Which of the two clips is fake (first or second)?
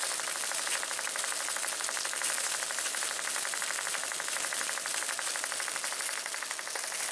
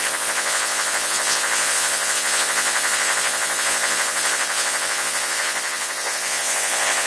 second